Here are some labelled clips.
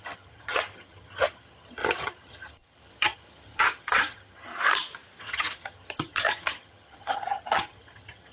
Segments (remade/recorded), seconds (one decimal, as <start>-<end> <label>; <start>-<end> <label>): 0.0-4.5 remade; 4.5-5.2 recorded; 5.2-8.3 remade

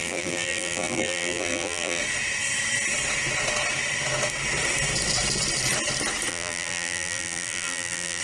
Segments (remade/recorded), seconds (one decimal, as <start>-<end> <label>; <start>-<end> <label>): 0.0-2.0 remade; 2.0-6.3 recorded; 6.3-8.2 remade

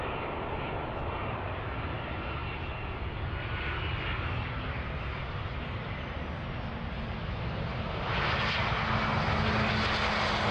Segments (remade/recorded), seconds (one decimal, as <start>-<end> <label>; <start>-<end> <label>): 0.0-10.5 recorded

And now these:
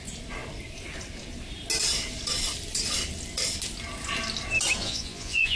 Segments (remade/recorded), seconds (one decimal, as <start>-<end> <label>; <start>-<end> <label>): 0.0-4.8 recorded; 4.8-5.6 remade

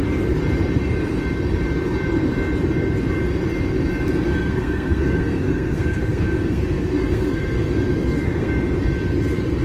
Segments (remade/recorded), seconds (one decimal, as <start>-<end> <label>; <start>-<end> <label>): 0.0-4.3 recorded; 4.3-8.5 remade; 8.5-9.6 recorded

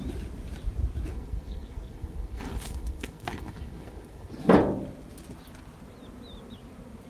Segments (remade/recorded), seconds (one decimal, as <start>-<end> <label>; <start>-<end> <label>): 0.0-1.1 recorded; 1.1-4.3 remade; 4.3-7.1 recorded